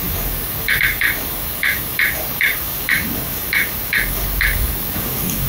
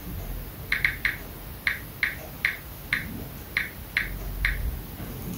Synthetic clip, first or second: first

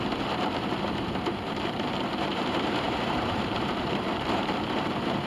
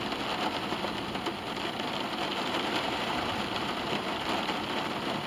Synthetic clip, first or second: first